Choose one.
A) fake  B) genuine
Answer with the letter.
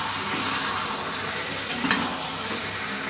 B